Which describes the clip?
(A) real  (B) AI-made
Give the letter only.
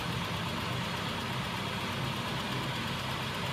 A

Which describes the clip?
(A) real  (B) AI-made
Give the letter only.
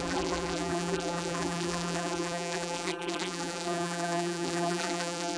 B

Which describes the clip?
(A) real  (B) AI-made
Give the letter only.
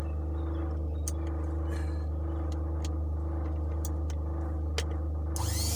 A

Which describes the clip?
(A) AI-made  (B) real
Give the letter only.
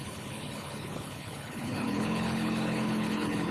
A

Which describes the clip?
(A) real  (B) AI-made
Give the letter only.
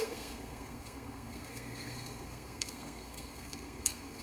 B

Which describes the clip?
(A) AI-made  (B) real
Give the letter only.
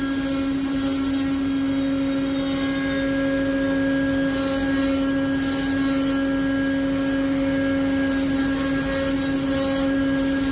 B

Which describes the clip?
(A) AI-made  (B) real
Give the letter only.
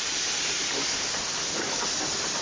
B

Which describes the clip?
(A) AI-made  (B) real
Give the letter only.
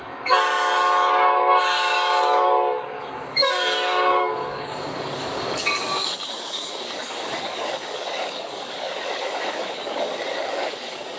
A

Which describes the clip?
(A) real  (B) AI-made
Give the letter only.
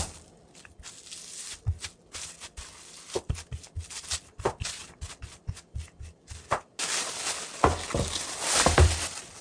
A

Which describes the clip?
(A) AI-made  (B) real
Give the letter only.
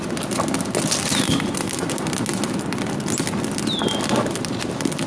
B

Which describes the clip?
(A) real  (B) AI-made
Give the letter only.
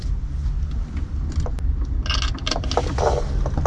A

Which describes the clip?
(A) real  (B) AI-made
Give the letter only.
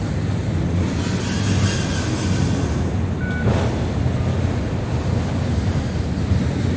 A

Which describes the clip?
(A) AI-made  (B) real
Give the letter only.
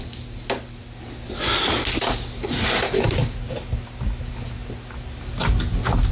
B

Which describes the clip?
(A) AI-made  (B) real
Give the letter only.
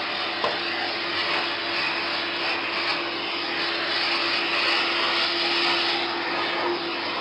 B